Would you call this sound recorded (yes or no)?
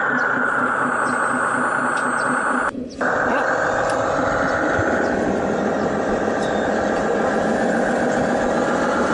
yes